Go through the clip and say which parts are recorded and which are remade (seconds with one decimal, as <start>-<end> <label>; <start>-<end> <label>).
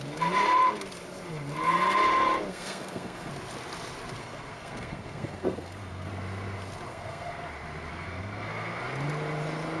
0.0-2.5 recorded; 2.5-3.3 remade; 3.3-4.2 recorded; 4.2-6.1 remade; 6.1-6.9 recorded; 6.9-7.5 remade; 7.5-7.9 recorded; 7.9-8.8 remade; 8.8-9.8 recorded